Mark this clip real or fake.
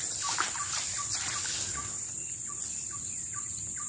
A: fake